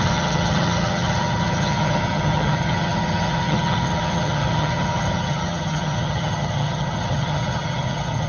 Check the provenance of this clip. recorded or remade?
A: remade